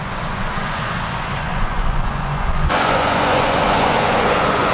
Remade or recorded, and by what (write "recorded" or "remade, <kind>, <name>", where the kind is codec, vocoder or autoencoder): remade, vocoder, Vocos